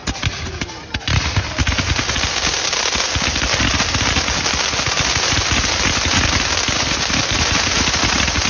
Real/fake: real